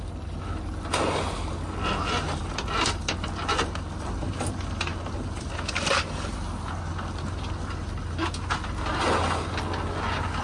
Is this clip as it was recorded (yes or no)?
yes